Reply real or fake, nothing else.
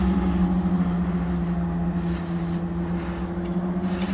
real